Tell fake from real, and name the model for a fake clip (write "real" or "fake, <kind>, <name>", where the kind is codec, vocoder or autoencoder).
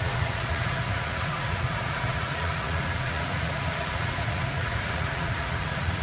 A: fake, vocoder, Vocos